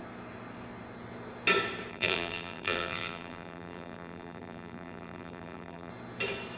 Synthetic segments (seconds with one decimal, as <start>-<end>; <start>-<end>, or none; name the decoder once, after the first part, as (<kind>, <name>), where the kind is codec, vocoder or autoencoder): 1.9-5.9 (vocoder, BigVGAN v2)